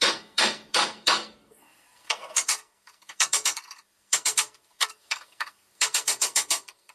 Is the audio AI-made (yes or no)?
yes